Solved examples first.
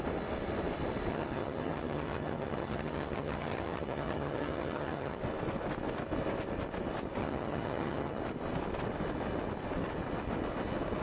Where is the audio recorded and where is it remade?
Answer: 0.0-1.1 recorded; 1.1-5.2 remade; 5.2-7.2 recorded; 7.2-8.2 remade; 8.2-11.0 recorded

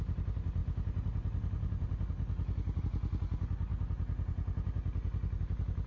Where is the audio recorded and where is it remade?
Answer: 0.0-5.9 recorded

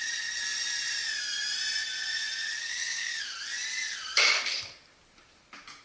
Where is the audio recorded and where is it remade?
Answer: 0.0-2.6 recorded; 2.6-3.2 remade; 3.2-5.8 recorded

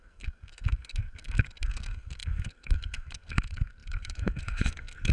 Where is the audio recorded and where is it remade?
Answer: 0.0-5.1 remade

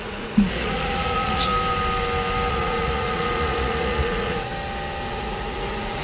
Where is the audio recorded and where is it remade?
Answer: 0.0-1.5 remade; 1.5-2.5 recorded; 2.5-4.5 remade; 4.5-5.1 recorded; 5.1-6.0 remade

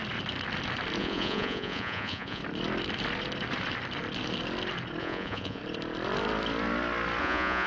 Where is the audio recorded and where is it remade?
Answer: 0.0-1.0 recorded; 1.0-2.4 remade; 2.4-5.0 recorded; 5.0-5.6 remade; 5.6-7.2 recorded; 7.2-7.7 remade

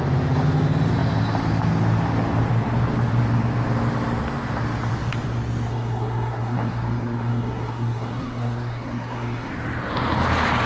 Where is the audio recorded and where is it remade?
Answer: 0.0-5.7 recorded; 5.7-9.5 remade; 9.5-10.7 recorded

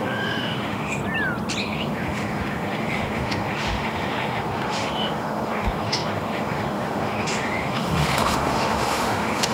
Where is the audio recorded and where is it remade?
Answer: 0.0-1.0 remade; 1.0-1.6 recorded; 1.6-9.5 remade